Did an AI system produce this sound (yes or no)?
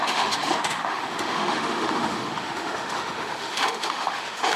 yes